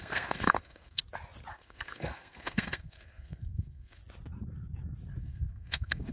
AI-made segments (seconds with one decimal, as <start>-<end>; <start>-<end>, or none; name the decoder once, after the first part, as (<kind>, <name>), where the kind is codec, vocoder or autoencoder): 0.0-1.0 (codec, SNAC); 1.5-4.0; 5.2-6.1